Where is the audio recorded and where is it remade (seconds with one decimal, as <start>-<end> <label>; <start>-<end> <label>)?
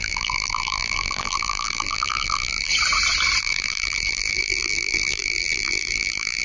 0.0-2.7 remade; 2.7-3.4 recorded; 3.4-6.4 remade